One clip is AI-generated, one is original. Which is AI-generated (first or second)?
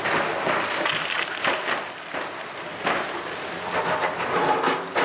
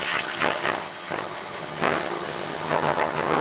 second